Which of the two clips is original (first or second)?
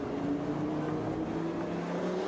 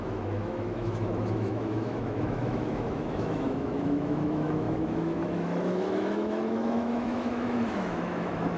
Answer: first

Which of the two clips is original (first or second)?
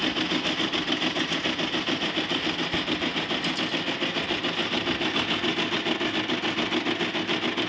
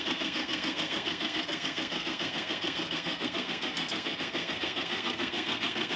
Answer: first